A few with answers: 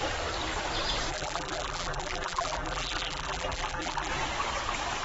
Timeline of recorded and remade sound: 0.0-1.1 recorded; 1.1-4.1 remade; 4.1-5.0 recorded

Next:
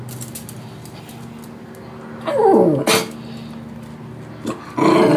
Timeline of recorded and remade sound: 0.0-5.2 recorded

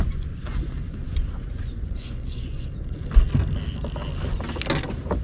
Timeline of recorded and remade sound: 0.0-3.1 remade; 3.1-5.2 recorded

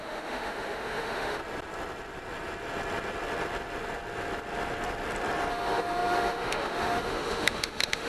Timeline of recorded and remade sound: 0.0-1.4 remade; 1.4-5.5 recorded; 5.5-8.1 remade

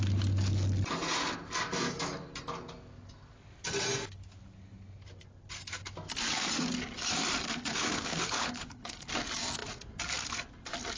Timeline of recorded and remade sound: 0.0-7.7 recorded; 7.7-9.1 remade; 9.1-11.0 recorded

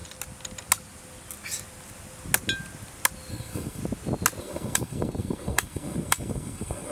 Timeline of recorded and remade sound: 0.0-3.3 recorded; 3.3-3.8 remade; 3.8-4.4 recorded; 4.4-6.9 remade